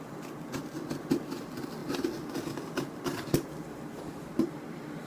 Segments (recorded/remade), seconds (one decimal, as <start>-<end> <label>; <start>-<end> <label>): 0.0-5.1 recorded